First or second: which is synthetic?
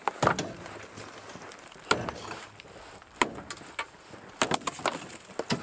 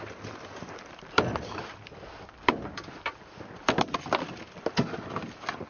second